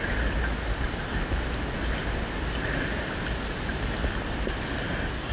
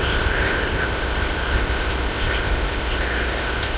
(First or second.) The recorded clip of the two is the first